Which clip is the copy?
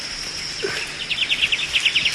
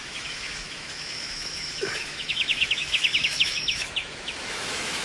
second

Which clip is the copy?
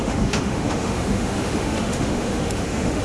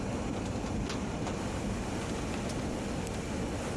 first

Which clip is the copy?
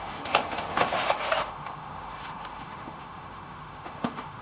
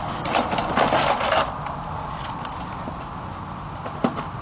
first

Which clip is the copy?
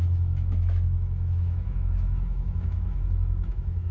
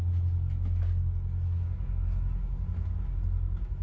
first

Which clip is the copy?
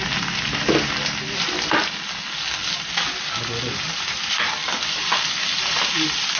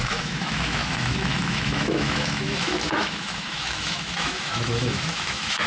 second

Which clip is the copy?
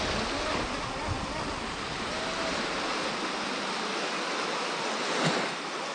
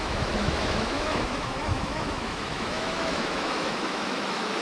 second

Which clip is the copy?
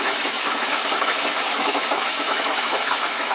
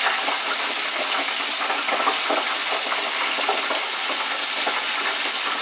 first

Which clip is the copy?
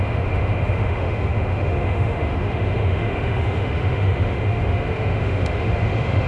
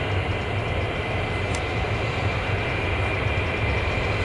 first